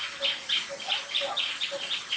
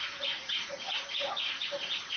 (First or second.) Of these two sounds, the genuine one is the first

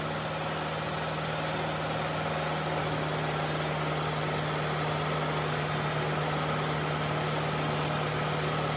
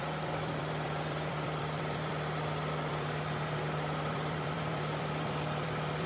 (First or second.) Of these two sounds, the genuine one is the first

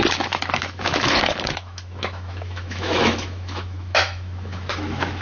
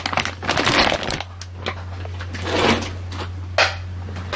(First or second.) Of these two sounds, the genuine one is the second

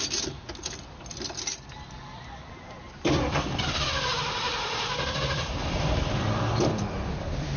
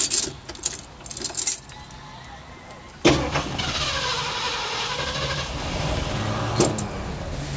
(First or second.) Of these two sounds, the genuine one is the second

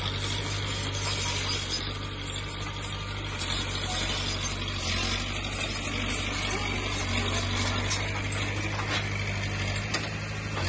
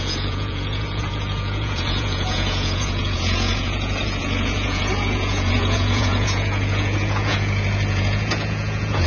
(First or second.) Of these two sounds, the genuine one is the first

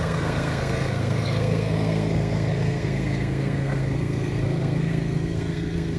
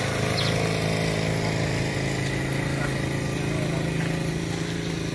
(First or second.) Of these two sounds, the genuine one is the second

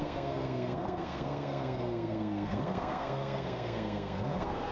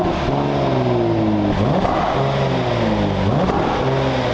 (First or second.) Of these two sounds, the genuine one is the second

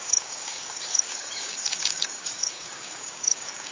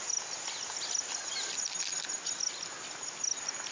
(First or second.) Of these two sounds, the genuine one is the second